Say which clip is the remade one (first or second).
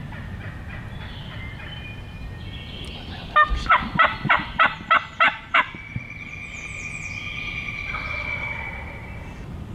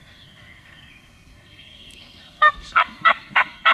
second